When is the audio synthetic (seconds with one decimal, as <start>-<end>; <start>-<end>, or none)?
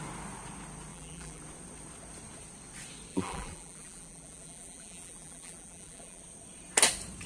0.9-1.4; 3.1-6.2